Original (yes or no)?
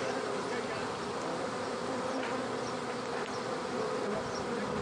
yes